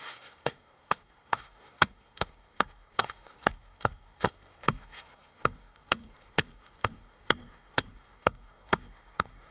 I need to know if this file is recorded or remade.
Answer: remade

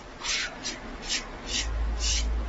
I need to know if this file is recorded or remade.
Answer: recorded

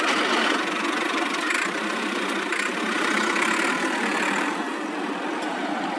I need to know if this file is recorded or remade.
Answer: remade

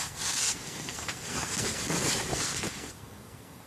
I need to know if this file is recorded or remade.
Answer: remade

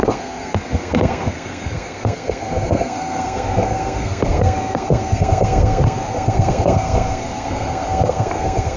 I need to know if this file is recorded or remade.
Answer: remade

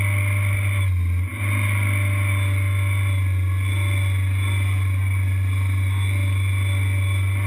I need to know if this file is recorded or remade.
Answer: recorded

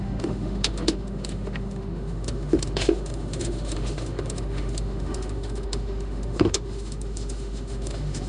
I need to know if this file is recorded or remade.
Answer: remade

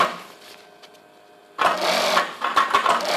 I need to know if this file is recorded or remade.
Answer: recorded